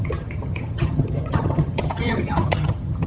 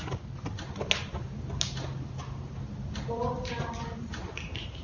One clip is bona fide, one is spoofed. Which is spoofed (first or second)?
first